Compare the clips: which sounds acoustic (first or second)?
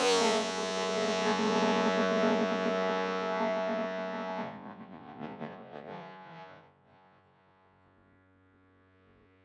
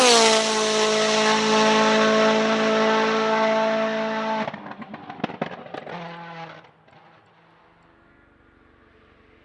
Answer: second